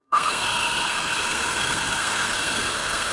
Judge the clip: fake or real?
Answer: fake